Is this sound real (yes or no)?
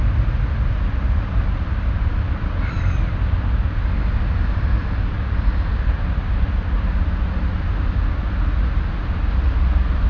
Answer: yes